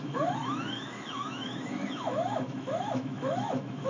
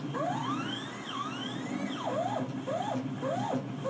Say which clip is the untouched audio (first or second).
second